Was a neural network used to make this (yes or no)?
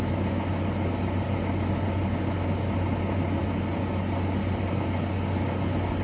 no